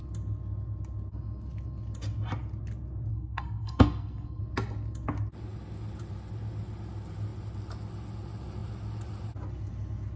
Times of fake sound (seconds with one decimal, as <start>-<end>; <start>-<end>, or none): 3.1-4.4